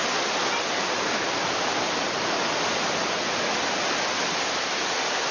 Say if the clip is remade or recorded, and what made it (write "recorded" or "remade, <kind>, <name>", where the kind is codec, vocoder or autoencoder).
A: recorded